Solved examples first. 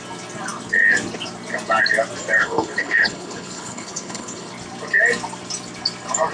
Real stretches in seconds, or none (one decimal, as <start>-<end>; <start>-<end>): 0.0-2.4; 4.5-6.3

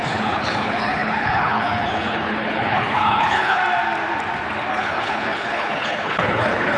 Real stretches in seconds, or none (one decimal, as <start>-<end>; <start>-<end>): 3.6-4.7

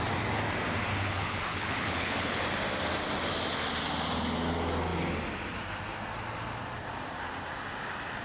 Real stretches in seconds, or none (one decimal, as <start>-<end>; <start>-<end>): 0.0-0.9; 2.4-8.2

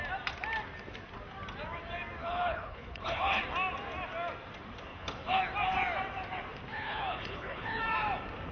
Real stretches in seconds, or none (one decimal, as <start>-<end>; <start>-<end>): 0.0-2.2; 3.4-4.9; 5.4-6.7; 7.8-8.5